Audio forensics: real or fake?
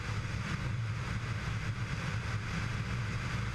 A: real